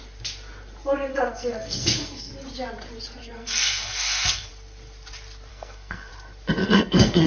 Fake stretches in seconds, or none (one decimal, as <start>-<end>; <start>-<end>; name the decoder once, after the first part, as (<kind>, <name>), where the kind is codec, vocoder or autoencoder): 1.1-2.3 (codec, SNAC); 3.2-4.5; 5.5-6.1; 6.6-7.3